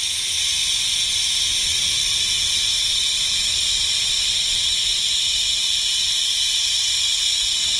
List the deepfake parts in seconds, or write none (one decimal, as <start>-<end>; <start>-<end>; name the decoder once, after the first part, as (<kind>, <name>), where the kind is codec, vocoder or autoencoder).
1.7-6.0 (vocoder, BigVGAN v2)